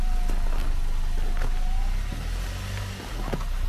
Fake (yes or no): no